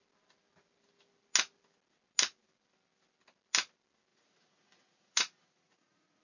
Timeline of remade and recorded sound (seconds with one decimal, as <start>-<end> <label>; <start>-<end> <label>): 0.0-4.1 recorded; 4.1-6.2 remade